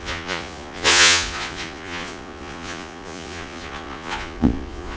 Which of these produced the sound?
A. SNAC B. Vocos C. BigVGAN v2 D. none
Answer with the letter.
B